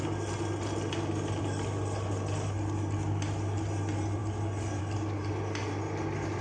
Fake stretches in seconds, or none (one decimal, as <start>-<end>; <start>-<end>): none